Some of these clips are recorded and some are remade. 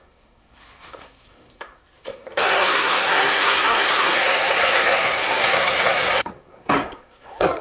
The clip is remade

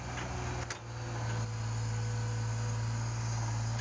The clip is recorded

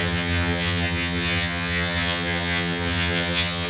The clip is remade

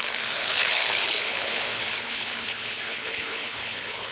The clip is remade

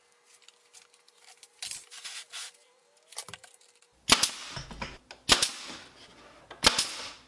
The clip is recorded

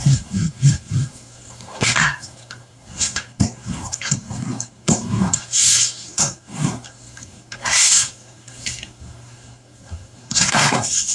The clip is remade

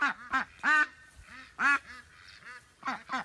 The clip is recorded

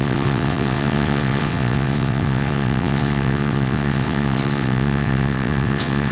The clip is remade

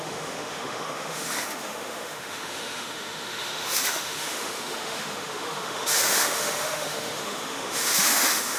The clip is remade